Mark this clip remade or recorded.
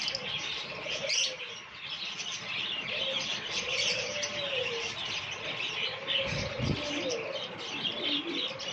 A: recorded